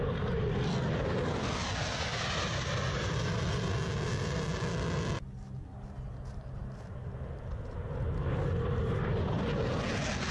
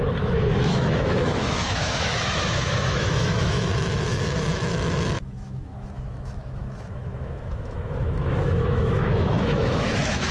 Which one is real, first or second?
first